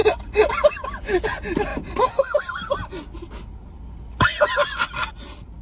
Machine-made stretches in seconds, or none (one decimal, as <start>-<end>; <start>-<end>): 0.0-0.5